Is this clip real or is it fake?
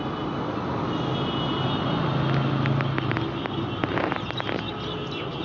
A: real